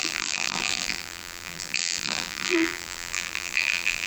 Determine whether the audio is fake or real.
fake